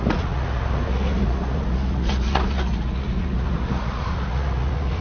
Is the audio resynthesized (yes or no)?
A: yes